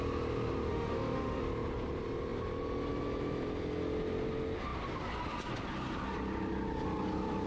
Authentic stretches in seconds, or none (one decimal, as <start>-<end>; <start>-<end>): 0.0-0.7; 1.4-7.5